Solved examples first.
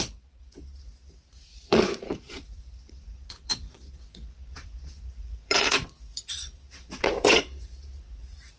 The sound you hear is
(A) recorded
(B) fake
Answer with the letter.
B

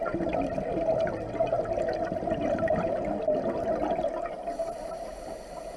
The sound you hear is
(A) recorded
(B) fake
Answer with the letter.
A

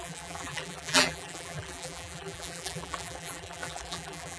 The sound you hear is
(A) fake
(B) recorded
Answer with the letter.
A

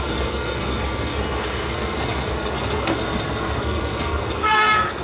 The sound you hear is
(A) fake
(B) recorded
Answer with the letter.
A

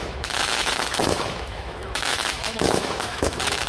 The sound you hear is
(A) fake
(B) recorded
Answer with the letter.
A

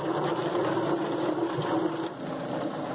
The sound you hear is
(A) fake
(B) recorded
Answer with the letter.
B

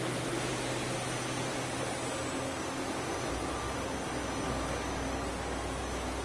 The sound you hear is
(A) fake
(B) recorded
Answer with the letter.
B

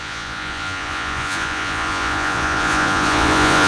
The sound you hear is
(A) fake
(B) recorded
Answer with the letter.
A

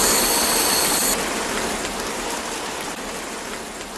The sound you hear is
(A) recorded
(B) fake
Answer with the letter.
A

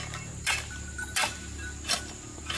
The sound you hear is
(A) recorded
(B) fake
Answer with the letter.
A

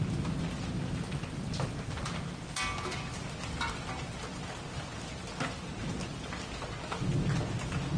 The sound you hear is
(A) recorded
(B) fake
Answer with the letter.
A